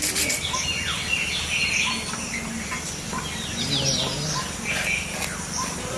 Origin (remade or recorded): recorded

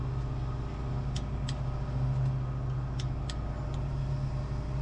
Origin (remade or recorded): recorded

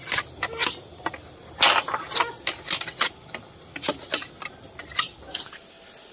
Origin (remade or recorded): recorded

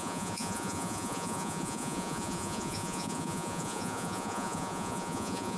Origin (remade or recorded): remade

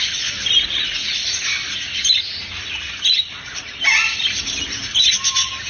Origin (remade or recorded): recorded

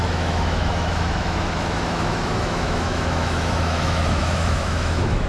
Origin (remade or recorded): remade